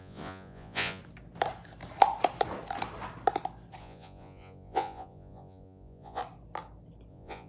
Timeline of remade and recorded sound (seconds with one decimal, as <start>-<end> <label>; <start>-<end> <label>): 0.0-1.0 remade; 1.0-3.8 recorded; 3.8-6.2 remade; 6.2-7.1 recorded; 7.1-7.5 remade